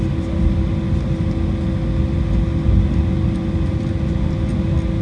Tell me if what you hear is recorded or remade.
recorded